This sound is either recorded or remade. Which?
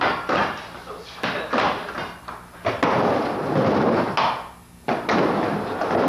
recorded